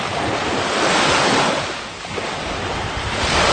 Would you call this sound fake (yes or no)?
no